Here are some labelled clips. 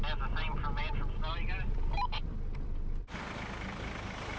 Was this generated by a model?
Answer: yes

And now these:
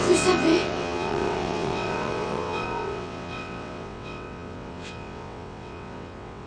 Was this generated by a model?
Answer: yes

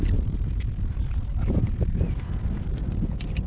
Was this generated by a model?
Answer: no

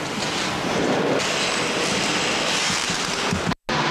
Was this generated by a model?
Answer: no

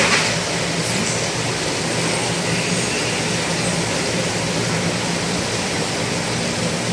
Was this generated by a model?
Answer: no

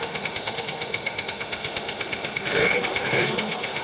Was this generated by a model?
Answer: yes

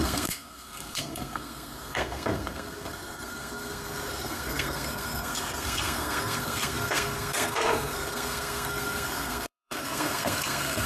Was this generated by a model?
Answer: yes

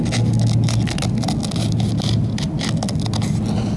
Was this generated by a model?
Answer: no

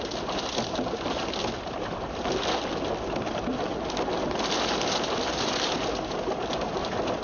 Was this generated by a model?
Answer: no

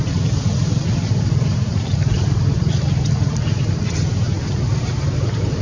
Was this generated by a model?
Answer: yes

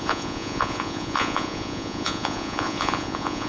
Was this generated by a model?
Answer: yes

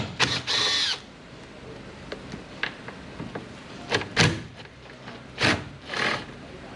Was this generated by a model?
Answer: no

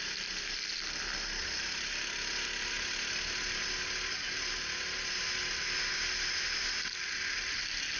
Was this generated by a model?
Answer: no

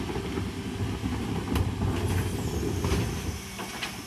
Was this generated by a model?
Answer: no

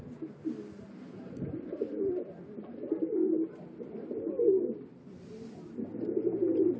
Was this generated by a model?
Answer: no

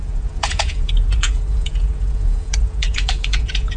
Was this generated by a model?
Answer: yes